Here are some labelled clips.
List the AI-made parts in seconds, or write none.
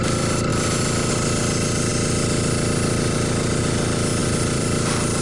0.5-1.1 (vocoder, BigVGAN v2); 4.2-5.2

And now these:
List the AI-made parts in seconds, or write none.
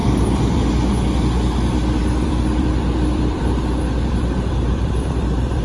0.0-0.7 (vocoder, BigVGAN v2); 2.0-5.6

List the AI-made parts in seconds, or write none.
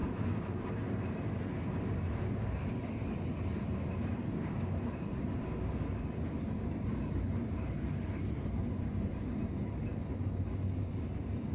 none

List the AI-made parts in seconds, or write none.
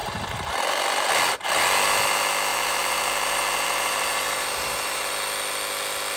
0.0-0.5 (vocoder, BigVGAN v2); 2.5-5.1